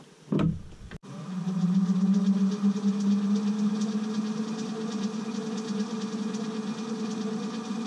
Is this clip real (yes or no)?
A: yes